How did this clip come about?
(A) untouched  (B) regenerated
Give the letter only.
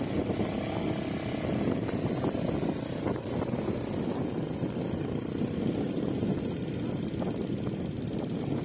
A